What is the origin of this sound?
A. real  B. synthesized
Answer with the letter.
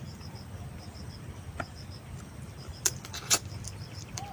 B